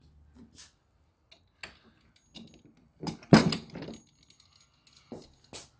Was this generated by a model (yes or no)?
no